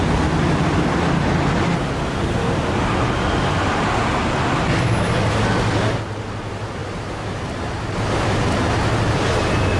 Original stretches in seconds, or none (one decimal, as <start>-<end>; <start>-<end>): 0.0-6.8; 7.9-9.8